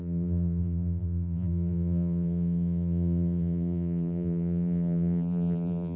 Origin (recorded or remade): remade